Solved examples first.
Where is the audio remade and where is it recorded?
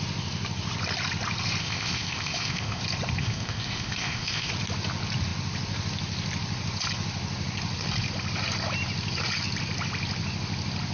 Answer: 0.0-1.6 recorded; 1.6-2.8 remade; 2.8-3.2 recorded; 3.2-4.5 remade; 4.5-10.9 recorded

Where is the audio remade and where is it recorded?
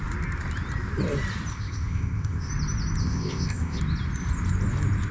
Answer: 0.0-1.5 recorded; 1.5-2.5 remade; 2.5-3.0 recorded; 3.0-3.8 remade; 3.8-5.1 recorded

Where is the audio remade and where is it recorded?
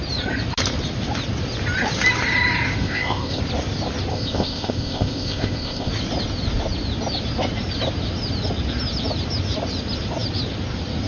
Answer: 0.0-2.8 recorded; 2.8-3.4 remade; 3.4-4.1 recorded; 4.1-5.9 remade; 5.9-11.1 recorded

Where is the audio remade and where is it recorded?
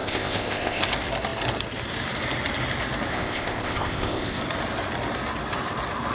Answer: 0.0-0.8 remade; 0.8-3.1 recorded; 3.1-4.4 remade; 4.4-6.1 recorded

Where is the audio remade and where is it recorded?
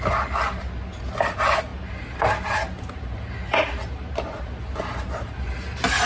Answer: 0.0-6.1 recorded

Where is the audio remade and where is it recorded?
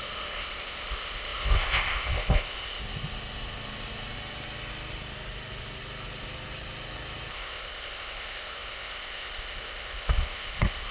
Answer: 0.0-2.8 remade; 2.8-7.3 recorded; 7.3-10.9 remade